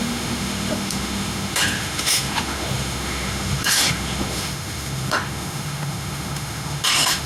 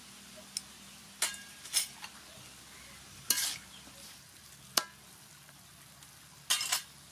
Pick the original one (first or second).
second